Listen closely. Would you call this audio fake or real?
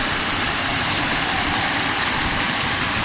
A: fake